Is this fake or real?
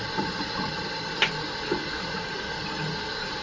real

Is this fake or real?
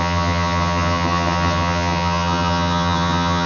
fake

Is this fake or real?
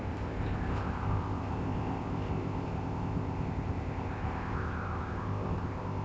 fake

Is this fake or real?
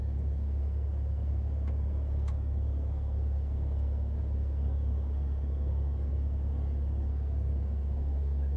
fake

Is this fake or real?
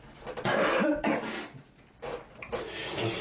real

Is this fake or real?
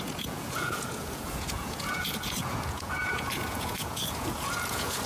fake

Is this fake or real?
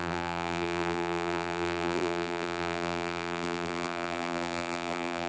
fake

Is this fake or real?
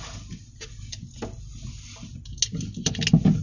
real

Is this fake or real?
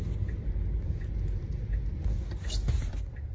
real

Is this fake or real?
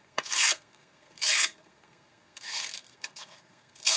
fake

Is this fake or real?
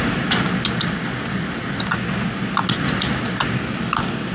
real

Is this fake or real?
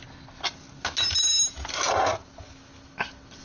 real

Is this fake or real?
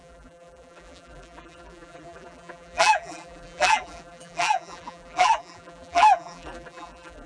fake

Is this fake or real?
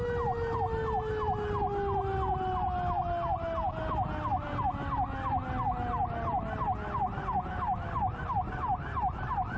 real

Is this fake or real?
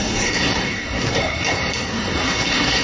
fake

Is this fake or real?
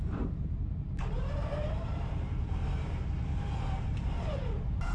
fake